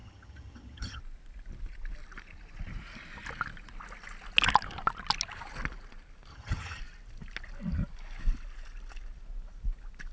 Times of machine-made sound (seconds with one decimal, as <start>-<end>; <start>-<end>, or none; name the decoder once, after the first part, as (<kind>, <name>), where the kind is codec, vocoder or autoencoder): 0.0-1.0 (vocoder, HiFi-GAN); 6.3-6.8